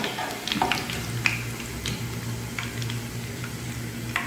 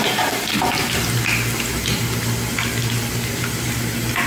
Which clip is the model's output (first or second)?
second